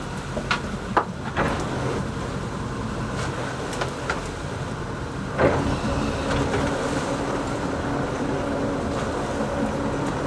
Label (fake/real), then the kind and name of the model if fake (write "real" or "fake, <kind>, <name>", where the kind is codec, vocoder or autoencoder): real